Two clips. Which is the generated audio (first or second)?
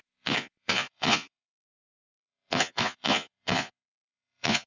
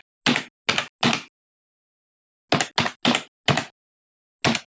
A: first